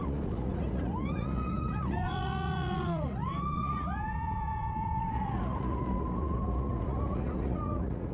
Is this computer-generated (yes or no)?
yes